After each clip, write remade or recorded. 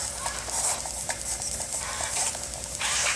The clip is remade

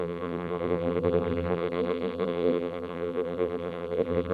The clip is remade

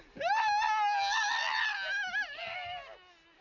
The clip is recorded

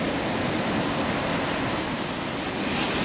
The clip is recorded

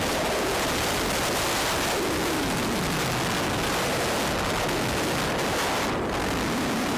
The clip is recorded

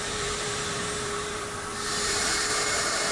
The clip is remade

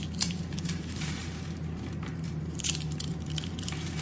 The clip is remade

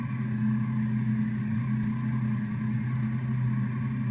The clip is recorded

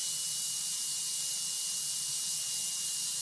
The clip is recorded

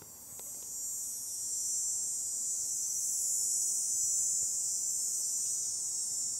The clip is recorded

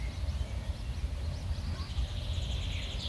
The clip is recorded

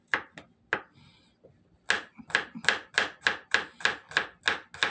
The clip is recorded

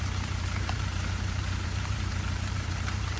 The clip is remade